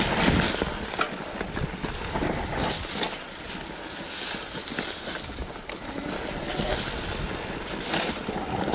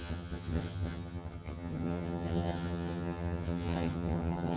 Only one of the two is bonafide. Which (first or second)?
first